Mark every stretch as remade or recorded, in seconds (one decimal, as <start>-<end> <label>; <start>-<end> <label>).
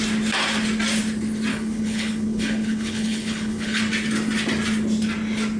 0.0-1.5 recorded; 1.5-3.8 remade; 3.8-5.6 recorded